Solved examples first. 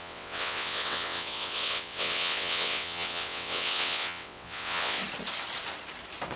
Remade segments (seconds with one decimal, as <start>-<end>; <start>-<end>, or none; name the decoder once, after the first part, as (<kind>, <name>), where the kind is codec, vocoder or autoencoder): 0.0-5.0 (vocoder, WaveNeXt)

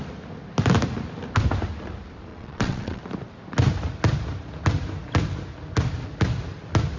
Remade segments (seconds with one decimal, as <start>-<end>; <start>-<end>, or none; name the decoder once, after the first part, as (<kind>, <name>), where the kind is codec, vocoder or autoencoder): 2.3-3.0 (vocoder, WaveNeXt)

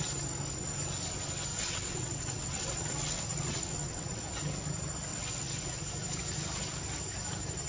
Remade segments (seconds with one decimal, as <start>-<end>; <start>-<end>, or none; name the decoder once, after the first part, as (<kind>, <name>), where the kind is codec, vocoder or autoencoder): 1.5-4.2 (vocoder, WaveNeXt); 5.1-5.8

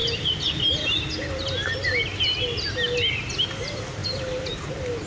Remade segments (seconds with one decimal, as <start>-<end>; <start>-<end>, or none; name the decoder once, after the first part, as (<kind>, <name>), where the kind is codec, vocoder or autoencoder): none